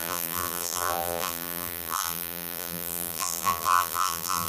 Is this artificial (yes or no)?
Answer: yes